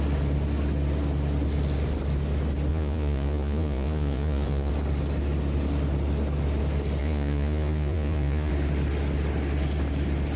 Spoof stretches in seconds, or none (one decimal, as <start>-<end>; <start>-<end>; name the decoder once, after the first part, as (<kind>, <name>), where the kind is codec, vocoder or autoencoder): 2.7-4.7 (vocoder, Vocos); 7.0-8.5